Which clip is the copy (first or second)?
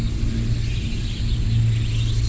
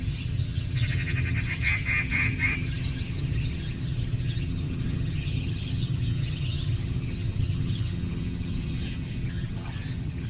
second